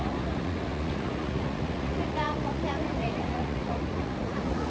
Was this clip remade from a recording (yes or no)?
yes